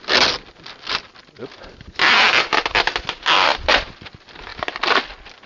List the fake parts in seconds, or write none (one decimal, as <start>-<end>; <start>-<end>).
none